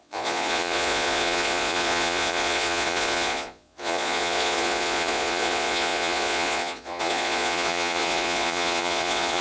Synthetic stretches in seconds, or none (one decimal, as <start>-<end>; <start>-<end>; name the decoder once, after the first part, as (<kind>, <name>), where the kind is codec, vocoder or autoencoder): 0.0-9.4 (vocoder, Vocos)